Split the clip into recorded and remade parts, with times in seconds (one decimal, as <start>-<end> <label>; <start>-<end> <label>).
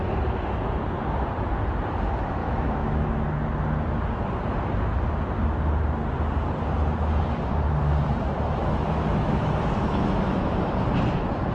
0.0-2.4 recorded; 2.4-3.1 remade; 3.1-8.6 recorded; 8.6-10.7 remade; 10.7-11.5 recorded